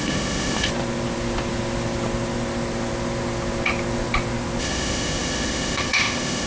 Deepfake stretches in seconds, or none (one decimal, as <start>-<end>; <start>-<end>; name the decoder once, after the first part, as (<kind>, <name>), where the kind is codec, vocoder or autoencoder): 0.0-0.7 (codec, ZipCodec); 4.6-6.5